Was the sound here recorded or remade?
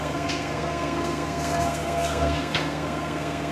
remade